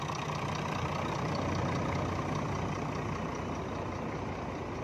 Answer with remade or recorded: recorded